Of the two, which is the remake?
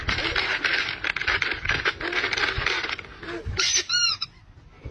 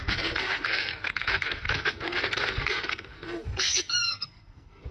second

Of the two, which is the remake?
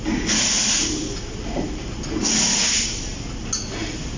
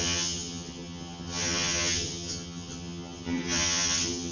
second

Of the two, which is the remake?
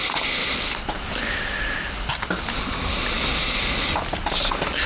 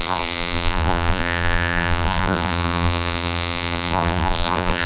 second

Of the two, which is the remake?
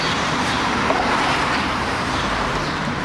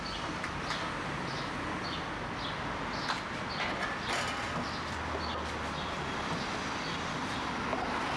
first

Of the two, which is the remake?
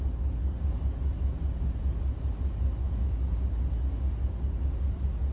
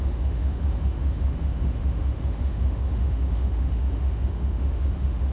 second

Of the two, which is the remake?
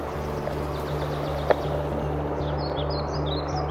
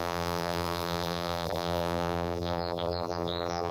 second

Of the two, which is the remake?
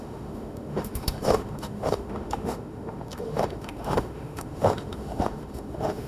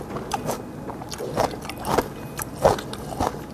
first